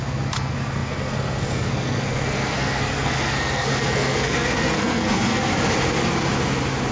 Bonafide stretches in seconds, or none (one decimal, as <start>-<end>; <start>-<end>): 5.5-6.9